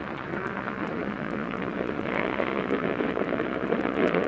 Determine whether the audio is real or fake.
fake